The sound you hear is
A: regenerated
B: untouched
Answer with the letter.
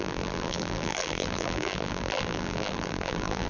A